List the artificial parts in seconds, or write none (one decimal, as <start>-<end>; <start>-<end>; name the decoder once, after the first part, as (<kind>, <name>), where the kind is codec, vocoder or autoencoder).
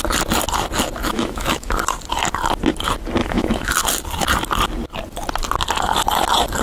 1.1-1.7 (autoencoder, DAC-VAE); 3.2-3.7